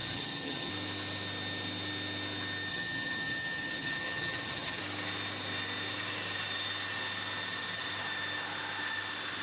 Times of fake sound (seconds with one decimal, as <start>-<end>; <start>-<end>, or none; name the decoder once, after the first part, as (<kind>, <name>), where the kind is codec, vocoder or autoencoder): 0.0-0.7 (vocoder, HiFi-GAN); 2.7-4.8